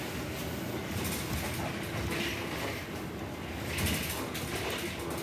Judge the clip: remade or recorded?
recorded